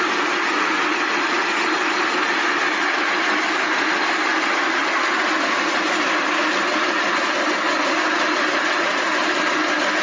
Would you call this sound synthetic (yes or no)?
no